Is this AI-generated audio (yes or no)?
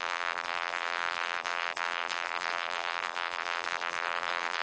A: yes